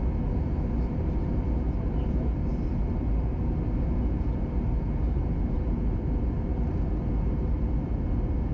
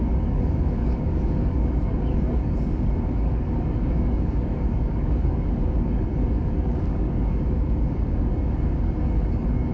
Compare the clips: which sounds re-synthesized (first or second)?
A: second